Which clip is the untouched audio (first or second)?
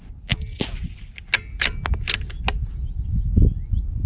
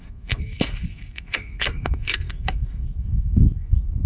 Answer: first